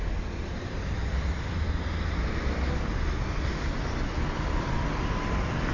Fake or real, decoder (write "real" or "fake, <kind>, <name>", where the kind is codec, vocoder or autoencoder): real